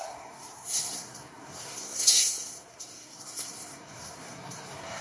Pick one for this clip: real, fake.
fake